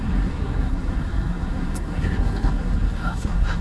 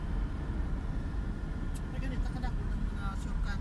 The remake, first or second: first